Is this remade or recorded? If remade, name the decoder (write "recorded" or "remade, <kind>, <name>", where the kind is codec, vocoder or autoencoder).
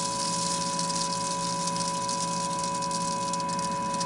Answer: recorded